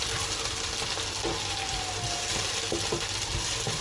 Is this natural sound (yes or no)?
yes